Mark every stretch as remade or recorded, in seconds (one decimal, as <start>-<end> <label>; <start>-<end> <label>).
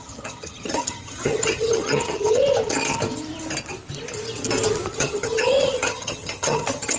0.0-2.4 remade; 2.4-4.9 recorded; 4.9-7.0 remade